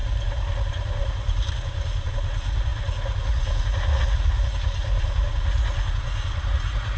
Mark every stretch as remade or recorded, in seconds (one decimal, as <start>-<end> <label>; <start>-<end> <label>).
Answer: 0.0-7.0 remade